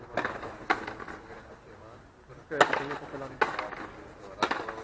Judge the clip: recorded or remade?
recorded